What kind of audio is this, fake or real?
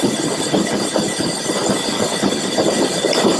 real